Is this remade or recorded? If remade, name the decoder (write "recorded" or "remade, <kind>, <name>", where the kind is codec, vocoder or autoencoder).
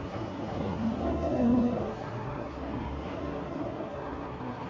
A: remade, codec, SNAC